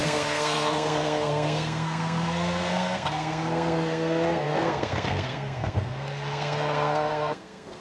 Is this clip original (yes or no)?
no